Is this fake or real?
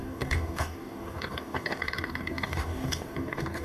fake